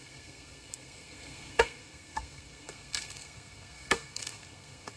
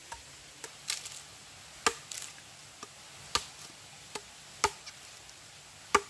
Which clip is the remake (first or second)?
first